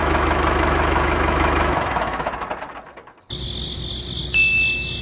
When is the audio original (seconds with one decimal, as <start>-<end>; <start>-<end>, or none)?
2.3-5.0

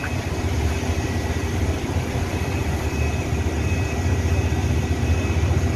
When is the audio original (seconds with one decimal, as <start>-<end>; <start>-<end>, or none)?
0.0-5.8

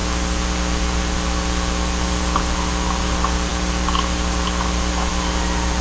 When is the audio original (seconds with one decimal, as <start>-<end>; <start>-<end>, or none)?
0.0-5.8

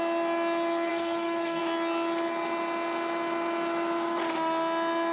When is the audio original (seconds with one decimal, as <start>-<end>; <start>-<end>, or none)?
0.0-0.9; 1.6-5.1